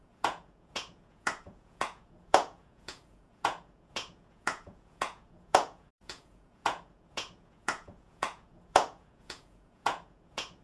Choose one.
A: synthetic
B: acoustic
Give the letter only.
A